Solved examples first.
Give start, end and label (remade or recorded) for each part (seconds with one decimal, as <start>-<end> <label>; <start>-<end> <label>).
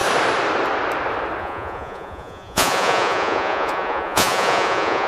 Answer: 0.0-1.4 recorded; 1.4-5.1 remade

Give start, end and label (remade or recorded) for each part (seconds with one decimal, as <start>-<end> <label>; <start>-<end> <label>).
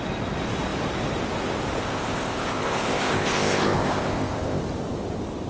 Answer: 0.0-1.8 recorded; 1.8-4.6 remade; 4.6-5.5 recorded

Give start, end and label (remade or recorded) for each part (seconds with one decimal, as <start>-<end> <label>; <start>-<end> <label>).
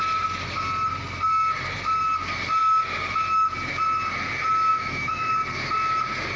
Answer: 0.0-4.7 recorded; 4.7-5.3 remade; 5.3-6.4 recorded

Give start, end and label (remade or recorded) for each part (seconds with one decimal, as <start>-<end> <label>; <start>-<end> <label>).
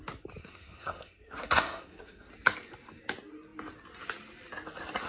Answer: 0.0-0.4 recorded; 0.4-2.3 remade; 2.3-5.1 recorded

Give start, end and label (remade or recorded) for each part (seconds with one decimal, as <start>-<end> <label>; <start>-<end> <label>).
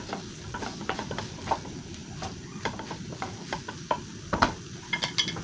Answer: 0.0-0.7 recorded; 0.7-1.2 remade; 1.2-5.4 recorded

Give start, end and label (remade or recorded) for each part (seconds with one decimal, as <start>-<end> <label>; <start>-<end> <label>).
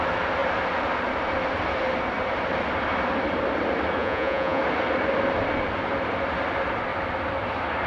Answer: 0.0-4.0 recorded; 4.0-4.6 remade; 4.6-7.9 recorded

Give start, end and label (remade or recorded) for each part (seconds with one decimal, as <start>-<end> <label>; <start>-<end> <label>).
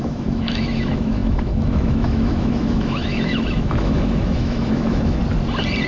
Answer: 0.0-5.2 remade; 5.2-5.9 recorded